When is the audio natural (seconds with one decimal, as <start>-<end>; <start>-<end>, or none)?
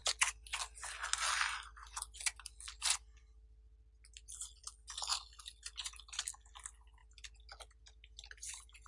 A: 0.0-8.9